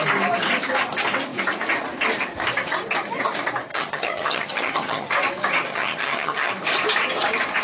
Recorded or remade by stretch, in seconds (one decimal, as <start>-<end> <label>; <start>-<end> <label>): 0.0-3.7 recorded; 3.7-5.1 remade; 5.1-5.7 recorded; 5.7-6.5 remade; 6.5-7.6 recorded